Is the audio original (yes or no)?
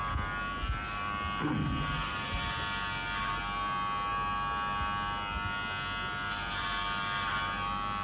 yes